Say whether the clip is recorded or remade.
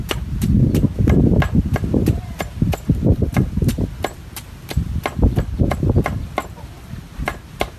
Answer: recorded